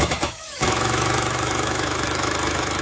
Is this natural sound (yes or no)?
no